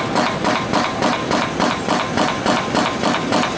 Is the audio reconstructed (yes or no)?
no